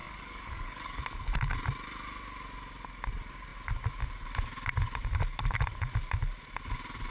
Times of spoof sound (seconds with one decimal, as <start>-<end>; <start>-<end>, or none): 0.0-1.0